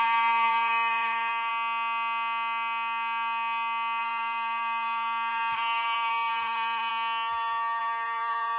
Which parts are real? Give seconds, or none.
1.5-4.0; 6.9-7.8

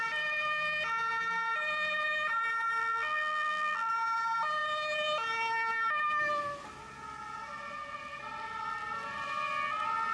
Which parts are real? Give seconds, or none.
0.0-2.8; 3.9-10.1

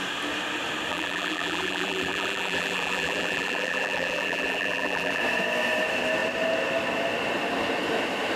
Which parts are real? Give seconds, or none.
0.0-0.9; 5.2-8.4

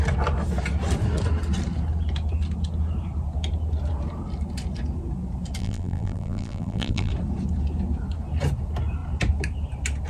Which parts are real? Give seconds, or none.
0.0-5.6; 7.1-10.1

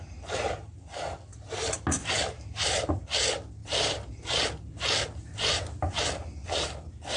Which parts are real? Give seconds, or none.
0.0-1.3; 2.9-3.6; 4.4-7.2

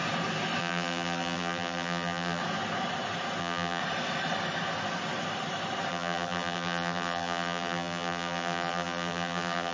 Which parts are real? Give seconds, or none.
0.0-0.6; 2.4-3.4; 3.8-5.9

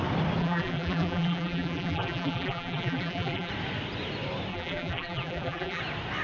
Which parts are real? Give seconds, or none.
0.0-0.4; 3.5-4.5; 5.8-6.2